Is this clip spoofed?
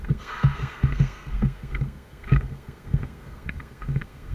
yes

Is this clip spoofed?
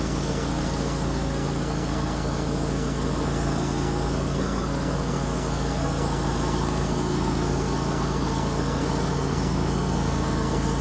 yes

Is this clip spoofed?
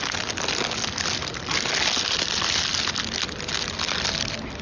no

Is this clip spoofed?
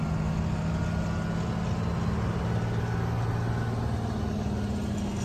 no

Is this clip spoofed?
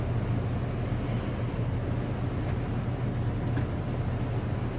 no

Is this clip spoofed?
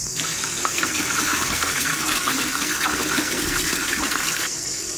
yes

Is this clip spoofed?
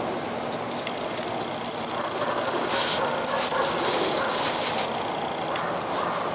no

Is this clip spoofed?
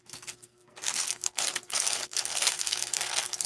yes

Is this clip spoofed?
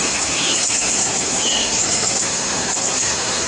yes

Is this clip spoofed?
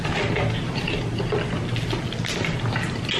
no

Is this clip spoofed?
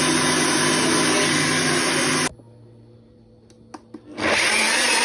no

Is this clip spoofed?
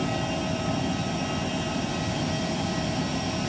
no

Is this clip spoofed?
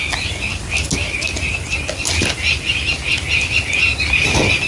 no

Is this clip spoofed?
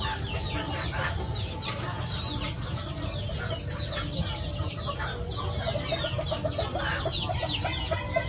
no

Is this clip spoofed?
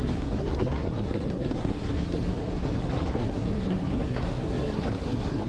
yes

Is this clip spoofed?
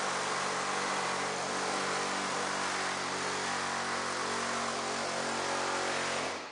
no